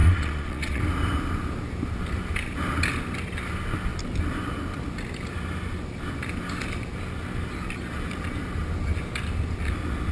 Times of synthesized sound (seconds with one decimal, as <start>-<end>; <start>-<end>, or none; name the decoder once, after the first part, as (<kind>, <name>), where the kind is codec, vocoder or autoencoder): 0.0-0.8 (vocoder, Vocos)